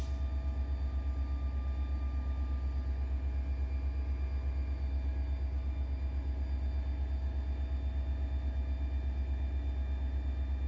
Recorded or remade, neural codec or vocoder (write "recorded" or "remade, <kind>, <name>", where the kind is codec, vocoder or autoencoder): recorded